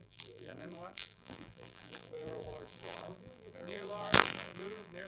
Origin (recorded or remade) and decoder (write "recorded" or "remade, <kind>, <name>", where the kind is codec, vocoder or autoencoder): remade, vocoder, BigVGAN v2